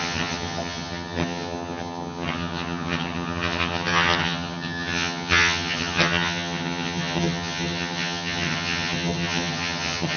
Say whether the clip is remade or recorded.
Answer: remade